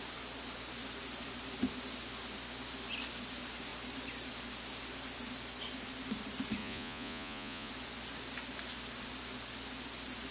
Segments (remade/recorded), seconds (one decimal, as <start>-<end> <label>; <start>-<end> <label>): 0.0-6.6 recorded; 6.6-7.7 remade; 7.7-10.3 recorded